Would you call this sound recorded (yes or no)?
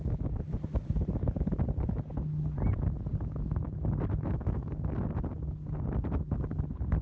yes